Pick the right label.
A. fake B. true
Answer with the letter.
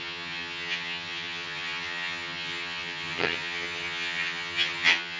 A